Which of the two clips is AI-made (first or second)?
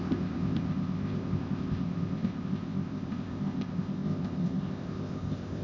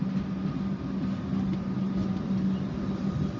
first